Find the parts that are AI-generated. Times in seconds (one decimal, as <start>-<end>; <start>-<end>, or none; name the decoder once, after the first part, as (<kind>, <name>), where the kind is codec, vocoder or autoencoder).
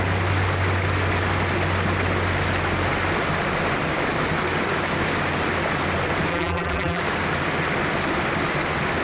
6.3-7.0 (vocoder, BigVGAN v2)